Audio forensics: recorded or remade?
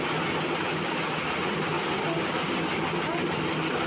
recorded